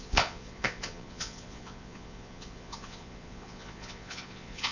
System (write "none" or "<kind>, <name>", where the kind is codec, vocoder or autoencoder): vocoder, Vocos